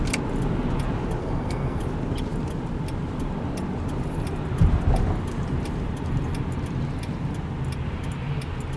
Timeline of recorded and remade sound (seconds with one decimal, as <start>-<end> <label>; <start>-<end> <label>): 0.0-1.2 recorded; 1.2-1.8 remade; 1.8-8.8 recorded